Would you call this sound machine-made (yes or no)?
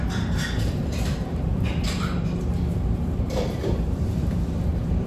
yes